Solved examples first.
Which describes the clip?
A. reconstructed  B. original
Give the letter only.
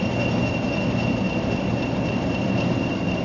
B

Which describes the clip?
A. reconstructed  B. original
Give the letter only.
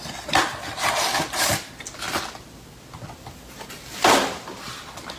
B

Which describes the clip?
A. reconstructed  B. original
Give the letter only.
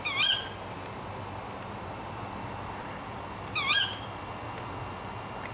B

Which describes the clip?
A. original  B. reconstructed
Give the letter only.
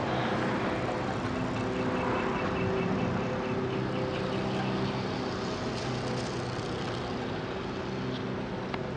A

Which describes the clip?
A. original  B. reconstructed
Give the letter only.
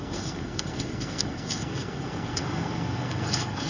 B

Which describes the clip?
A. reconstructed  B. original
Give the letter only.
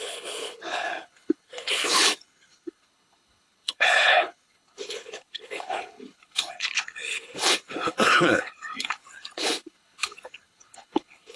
A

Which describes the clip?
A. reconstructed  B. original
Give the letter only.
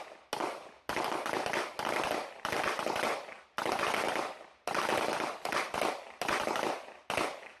B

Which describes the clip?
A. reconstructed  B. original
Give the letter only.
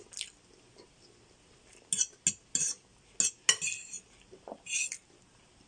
B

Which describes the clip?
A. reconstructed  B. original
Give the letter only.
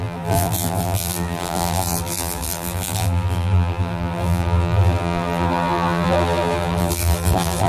A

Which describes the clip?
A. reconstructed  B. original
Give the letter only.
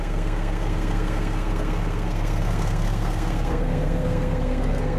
A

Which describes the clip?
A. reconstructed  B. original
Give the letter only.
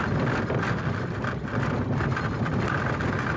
B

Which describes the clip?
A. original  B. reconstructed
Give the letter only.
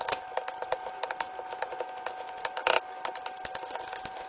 A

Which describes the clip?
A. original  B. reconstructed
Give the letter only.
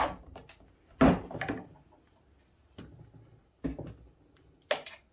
A